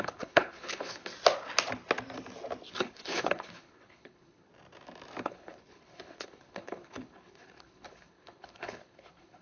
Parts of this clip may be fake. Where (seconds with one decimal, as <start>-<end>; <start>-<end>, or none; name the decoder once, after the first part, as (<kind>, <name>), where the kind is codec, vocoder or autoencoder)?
0.0-1.1 (codec, HILCodec); 2.7-4.5; 5.2-9.4